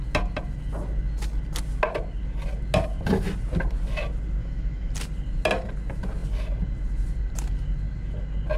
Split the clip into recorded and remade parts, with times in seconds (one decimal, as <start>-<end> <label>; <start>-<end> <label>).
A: 0.0-4.4 recorded; 4.4-4.9 remade; 4.9-8.6 recorded